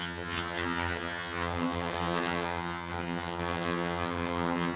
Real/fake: fake